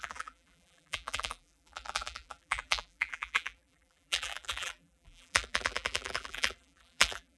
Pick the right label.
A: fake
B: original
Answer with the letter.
A